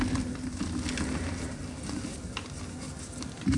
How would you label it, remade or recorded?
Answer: recorded